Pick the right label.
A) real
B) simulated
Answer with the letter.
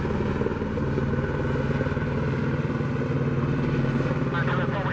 A